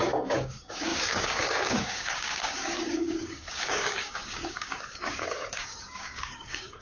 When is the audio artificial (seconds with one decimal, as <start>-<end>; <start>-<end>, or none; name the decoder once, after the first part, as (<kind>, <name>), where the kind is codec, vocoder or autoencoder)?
0.0-6.8 (codec, DAC)